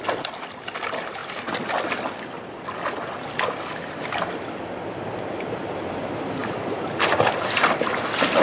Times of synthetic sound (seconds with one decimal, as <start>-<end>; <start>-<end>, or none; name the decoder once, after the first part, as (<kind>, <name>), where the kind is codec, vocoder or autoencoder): 1.2-4.6 (vocoder, BigVGAN v2)